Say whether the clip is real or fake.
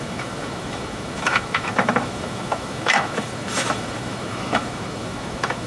fake